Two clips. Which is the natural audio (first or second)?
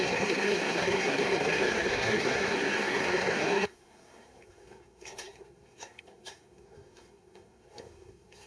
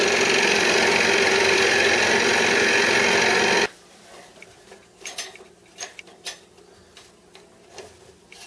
second